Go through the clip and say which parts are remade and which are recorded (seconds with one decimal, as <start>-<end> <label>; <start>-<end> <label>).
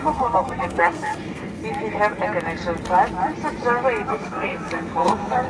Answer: 0.0-1.6 remade; 1.6-4.1 recorded; 4.1-5.5 remade